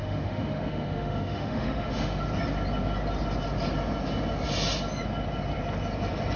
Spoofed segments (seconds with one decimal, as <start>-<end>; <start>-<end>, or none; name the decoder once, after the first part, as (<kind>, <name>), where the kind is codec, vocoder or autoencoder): 0.0-2.3 (autoencoder, DAC-VAE)